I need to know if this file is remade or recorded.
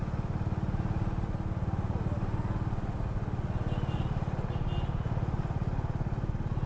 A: recorded